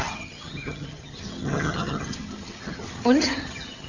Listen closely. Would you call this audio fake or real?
fake